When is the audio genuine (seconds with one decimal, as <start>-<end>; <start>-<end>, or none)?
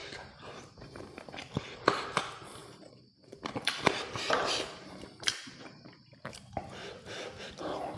1.3-2.6; 6.6-8.0